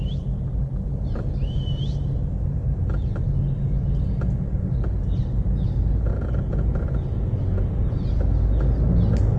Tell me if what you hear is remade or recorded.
recorded